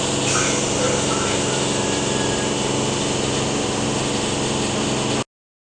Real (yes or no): yes